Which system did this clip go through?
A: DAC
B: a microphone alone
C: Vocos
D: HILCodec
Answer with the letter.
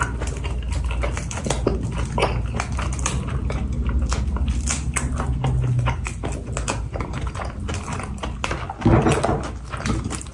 B